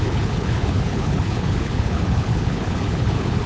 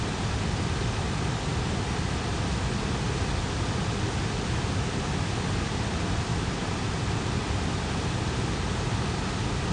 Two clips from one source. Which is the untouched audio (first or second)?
second